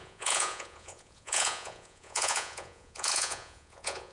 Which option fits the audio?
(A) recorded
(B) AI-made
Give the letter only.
B